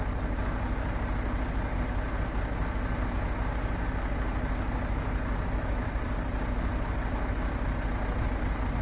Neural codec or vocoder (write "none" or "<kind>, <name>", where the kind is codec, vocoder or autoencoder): none